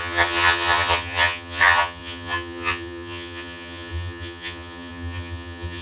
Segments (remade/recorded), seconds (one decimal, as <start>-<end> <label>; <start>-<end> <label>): 0.0-5.8 remade